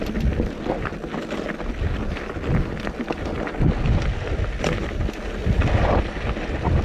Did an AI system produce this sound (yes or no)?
no